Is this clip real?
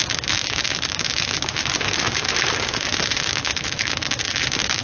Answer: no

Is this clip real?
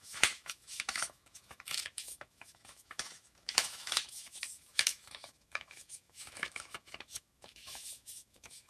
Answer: no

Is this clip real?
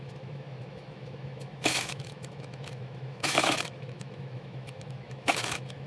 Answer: no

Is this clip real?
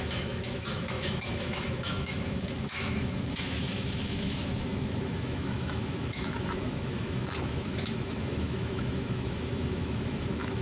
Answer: no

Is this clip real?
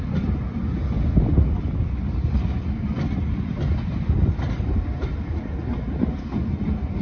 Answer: yes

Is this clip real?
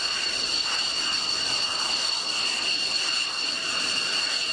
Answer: yes